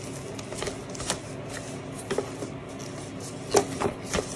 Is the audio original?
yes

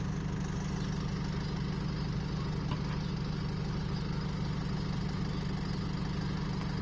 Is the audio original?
yes